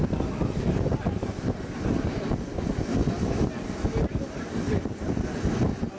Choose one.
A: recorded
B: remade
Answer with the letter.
A